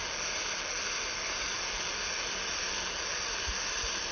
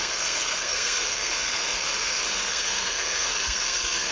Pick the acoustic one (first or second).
first